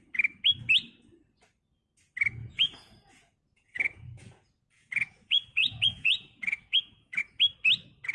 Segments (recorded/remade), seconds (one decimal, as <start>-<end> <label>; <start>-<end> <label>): 0.0-2.4 recorded; 2.4-7.2 remade; 7.2-8.1 recorded